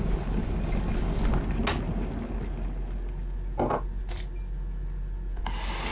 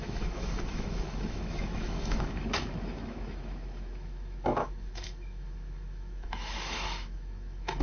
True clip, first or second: first